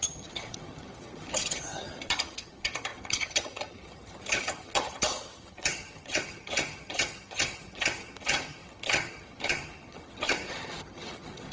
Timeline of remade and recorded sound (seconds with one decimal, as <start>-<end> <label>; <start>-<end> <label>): 0.0-11.5 remade